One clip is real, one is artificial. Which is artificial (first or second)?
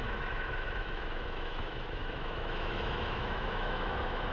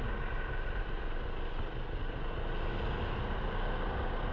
first